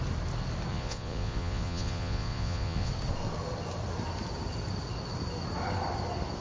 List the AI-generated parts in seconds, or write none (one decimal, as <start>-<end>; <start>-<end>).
0.7-2.9